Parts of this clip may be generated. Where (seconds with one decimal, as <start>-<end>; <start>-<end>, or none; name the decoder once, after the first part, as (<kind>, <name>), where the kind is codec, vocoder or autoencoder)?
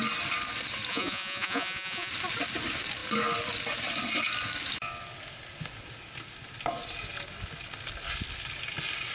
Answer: 0.9-2.1 (vocoder, Vocos)